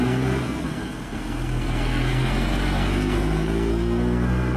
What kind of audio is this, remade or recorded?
remade